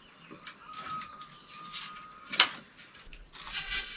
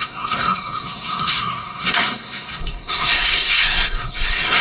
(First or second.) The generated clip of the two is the second